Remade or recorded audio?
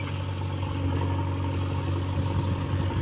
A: recorded